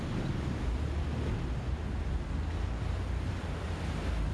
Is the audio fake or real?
real